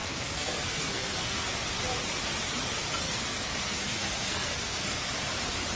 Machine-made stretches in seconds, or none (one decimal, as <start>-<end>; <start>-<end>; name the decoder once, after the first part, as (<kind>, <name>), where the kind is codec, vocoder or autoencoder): 0.0-1.5 (codec, SNAC); 3.0-5.1